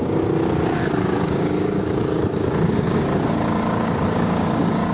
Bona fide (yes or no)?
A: no